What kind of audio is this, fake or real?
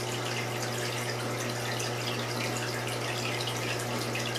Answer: real